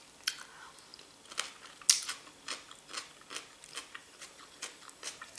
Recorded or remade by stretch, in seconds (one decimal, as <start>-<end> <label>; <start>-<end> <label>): 0.0-4.0 recorded; 4.0-5.4 remade